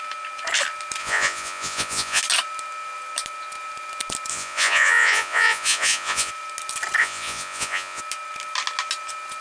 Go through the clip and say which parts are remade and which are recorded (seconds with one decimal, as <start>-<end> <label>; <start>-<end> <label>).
0.0-1.0 recorded; 1.0-2.2 remade; 2.2-4.3 recorded; 4.3-6.3 remade; 6.3-7.0 recorded; 7.0-8.0 remade; 8.0-9.4 recorded